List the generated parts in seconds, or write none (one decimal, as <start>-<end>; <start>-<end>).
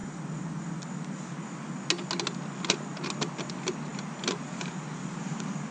none